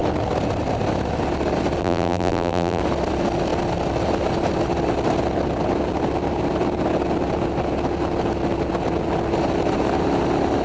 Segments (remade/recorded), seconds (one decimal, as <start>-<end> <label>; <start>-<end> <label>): 0.0-1.8 recorded; 1.8-2.8 remade; 2.8-10.6 recorded